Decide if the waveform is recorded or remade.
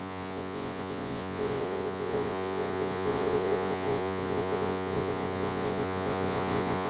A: remade